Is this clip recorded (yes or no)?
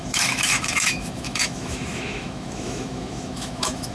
no